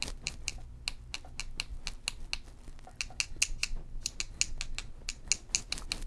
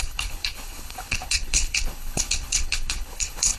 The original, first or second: first